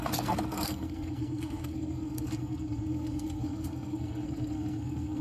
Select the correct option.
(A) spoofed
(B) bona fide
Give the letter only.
A